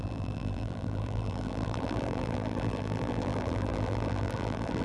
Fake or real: fake